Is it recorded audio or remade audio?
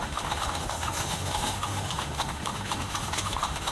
remade